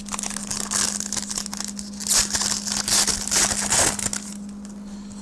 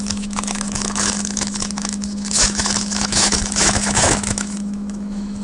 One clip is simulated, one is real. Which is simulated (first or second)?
second